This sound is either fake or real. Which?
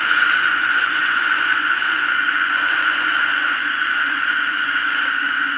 fake